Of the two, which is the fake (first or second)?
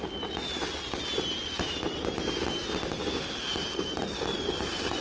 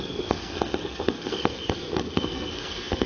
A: second